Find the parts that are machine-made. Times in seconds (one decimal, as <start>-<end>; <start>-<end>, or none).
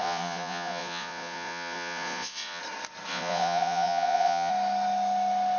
0.0-2.6; 3.1-4.5